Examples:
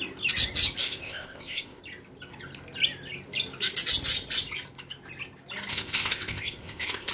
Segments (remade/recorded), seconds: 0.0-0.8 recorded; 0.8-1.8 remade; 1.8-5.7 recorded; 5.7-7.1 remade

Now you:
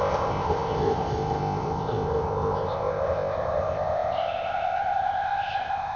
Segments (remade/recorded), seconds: 0.0-6.0 remade

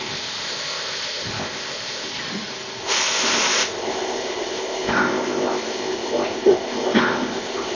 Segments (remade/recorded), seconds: 0.0-2.2 remade; 2.2-2.8 recorded; 2.8-7.8 remade

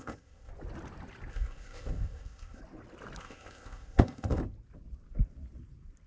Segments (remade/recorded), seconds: 0.0-0.5 remade; 0.5-1.3 recorded; 1.3-2.6 remade; 2.6-3.2 recorded; 3.2-4.4 remade; 4.4-6.1 recorded